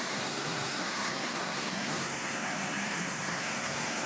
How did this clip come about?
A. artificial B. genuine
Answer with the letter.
A